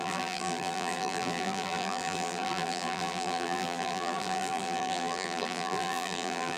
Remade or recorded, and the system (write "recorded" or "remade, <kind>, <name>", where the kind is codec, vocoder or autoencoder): remade, vocoder, BigVGAN v2